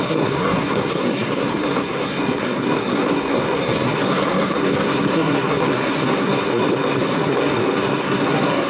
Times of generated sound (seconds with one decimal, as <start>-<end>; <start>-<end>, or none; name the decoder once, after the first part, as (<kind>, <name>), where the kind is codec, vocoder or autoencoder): 0.0-8.7 (codec, SNAC)